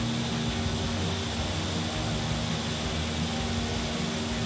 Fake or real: real